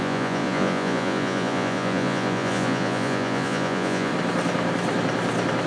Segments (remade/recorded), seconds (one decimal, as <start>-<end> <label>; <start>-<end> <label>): 0.0-4.1 remade; 4.1-5.7 recorded